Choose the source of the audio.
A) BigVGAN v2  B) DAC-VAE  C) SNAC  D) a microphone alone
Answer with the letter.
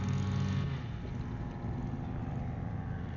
D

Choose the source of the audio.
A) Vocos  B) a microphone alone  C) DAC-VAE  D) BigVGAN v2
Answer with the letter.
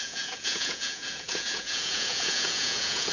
A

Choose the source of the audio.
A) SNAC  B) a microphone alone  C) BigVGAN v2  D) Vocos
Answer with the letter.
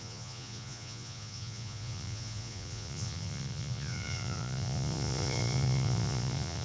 D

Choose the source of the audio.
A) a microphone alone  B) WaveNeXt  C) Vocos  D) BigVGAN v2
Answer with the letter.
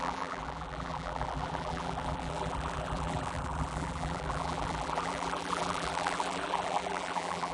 D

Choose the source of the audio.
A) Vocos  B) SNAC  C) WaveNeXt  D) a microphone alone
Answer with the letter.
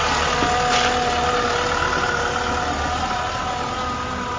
D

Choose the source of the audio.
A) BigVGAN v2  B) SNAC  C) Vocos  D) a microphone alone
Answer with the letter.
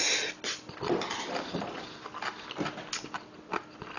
D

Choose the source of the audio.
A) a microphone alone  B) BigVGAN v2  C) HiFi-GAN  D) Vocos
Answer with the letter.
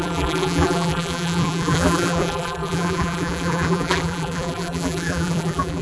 B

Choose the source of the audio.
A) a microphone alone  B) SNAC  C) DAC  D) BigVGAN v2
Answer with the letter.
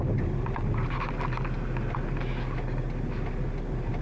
A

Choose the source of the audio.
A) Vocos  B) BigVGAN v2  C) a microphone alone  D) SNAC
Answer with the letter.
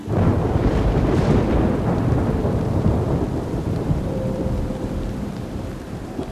B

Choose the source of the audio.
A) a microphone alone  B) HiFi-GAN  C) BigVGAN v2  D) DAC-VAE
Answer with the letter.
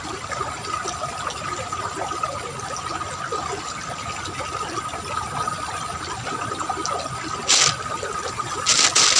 A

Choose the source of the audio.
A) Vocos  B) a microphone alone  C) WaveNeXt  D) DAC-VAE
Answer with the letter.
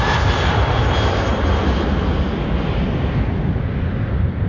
B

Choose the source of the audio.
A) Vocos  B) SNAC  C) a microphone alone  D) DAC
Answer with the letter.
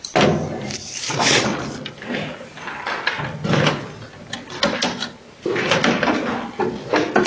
C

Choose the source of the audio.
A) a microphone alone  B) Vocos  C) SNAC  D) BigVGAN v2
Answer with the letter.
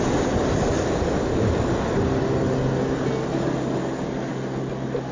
A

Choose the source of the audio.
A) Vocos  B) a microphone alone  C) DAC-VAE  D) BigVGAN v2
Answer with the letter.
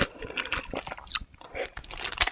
B